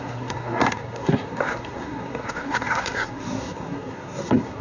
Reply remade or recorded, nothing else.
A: remade